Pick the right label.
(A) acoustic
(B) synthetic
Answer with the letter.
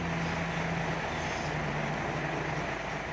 A